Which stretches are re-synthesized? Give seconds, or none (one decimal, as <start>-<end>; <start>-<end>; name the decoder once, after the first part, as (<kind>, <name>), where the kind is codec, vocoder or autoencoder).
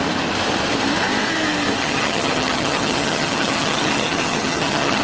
1.8-5.0 (vocoder, HiFi-GAN)